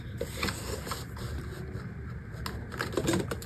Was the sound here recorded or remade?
recorded